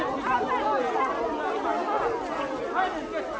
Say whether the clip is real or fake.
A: real